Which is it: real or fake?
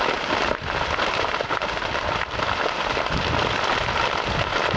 real